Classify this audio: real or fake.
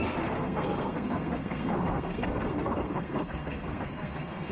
fake